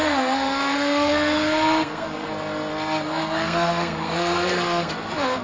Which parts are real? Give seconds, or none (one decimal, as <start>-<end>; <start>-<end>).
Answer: 2.3-2.7; 4.9-5.4